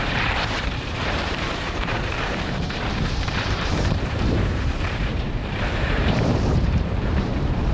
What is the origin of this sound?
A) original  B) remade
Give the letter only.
B